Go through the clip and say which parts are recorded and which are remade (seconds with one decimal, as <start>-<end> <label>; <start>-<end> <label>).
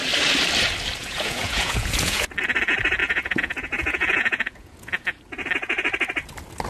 0.0-1.0 recorded; 1.0-2.3 remade; 2.3-3.0 recorded; 3.0-5.2 remade; 5.2-6.7 recorded